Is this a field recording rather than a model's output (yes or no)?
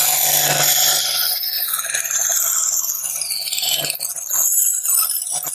yes